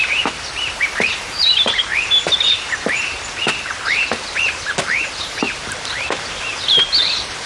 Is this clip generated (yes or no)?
yes